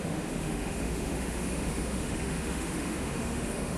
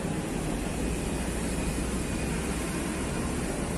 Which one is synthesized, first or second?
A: first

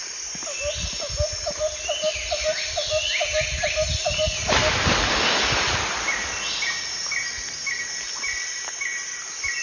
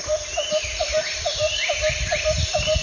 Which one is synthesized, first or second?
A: second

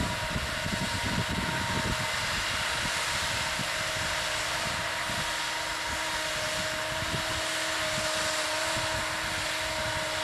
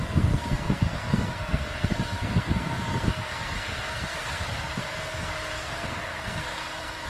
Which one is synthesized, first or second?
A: second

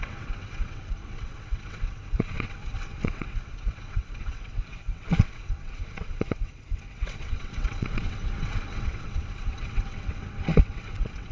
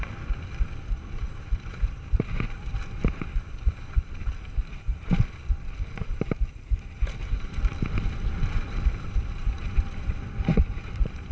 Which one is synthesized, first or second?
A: first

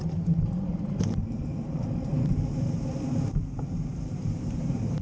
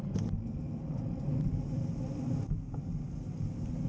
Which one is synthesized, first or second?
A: first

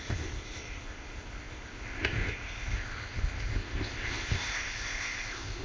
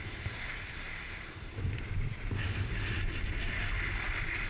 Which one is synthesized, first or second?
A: first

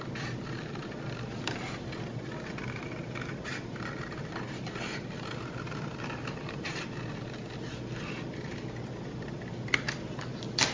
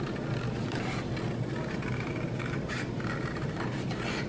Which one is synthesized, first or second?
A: first